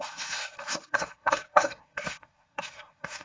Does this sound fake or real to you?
fake